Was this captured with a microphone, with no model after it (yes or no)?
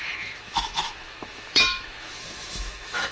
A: no